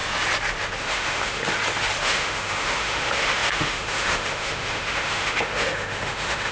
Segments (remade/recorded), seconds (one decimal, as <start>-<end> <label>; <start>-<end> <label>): 0.0-0.8 recorded; 0.8-1.4 remade; 1.4-2.0 recorded; 2.0-6.5 remade

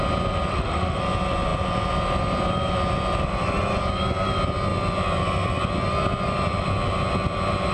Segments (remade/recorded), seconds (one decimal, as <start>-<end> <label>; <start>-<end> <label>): 0.0-0.5 recorded; 0.5-1.0 remade; 1.0-7.7 recorded

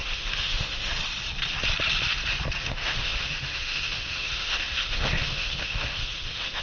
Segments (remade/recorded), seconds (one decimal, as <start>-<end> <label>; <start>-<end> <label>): 0.0-0.9 remade; 0.9-2.6 recorded; 2.6-6.6 remade

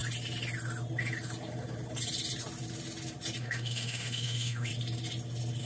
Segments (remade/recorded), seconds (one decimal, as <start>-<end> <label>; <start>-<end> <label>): 0.0-3.4 recorded; 3.4-4.7 remade; 4.7-5.6 recorded

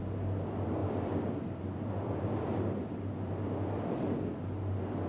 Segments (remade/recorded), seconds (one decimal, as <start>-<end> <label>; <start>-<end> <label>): 0.0-5.1 recorded

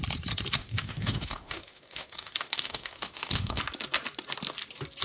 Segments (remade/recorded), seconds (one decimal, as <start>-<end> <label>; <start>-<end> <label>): 0.0-0.6 recorded; 0.6-3.6 remade; 3.6-5.0 recorded